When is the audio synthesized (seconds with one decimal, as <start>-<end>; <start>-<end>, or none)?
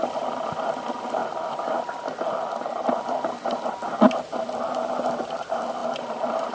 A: 1.2-5.1; 5.8-6.5